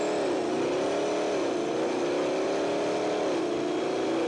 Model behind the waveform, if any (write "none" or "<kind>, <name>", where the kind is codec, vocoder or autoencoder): none